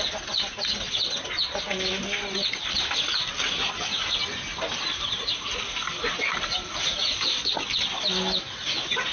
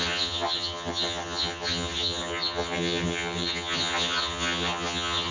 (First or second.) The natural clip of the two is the first